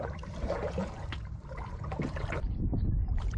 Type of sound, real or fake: fake